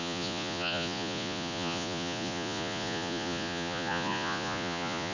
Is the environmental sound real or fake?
fake